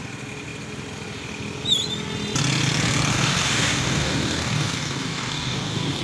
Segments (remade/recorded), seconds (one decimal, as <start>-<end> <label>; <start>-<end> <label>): 0.0-3.1 recorded; 3.1-6.0 remade